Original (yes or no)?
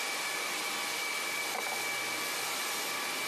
yes